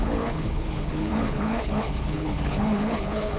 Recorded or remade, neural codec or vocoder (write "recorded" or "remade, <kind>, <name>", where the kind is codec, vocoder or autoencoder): remade, codec, HILCodec